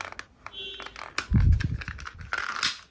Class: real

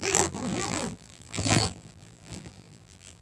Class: fake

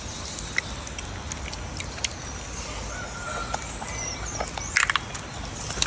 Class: real